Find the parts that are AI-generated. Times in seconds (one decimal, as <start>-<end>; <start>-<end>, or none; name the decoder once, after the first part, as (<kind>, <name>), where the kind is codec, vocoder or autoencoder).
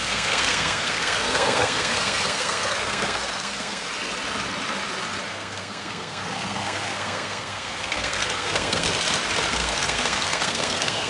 0.0-3.9 (codec, SNAC); 5.3-8.9; 9.5-11.1